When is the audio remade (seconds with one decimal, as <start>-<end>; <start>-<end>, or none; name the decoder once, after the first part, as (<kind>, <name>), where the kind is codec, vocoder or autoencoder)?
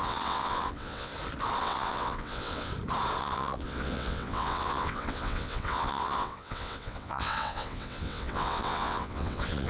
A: 0.0-1.1 (vocoder, WaveNeXt); 1.6-2.7; 3.2-9.7